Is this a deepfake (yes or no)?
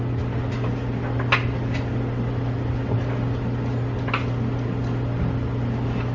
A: no